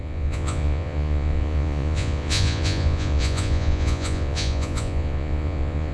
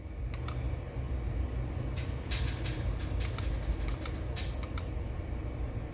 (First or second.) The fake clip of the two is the first